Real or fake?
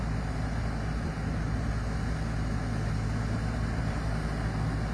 real